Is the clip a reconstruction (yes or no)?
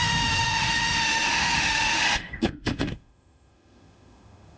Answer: yes